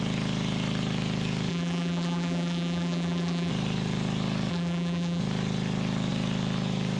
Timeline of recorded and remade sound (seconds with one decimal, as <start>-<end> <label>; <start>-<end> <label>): 0.0-1.5 recorded; 1.5-3.5 remade; 3.5-4.5 recorded; 4.5-5.2 remade; 5.2-7.0 recorded